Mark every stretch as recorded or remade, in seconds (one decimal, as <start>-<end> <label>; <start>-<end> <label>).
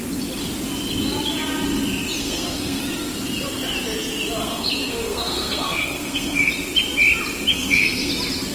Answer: 0.0-2.2 recorded; 2.2-2.8 remade; 2.8-4.4 recorded; 4.4-6.5 remade; 6.5-7.5 recorded; 7.5-8.1 remade; 8.1-8.5 recorded